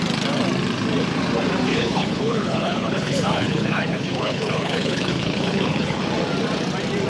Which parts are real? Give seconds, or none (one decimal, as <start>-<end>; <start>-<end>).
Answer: 0.0-1.7; 6.0-7.1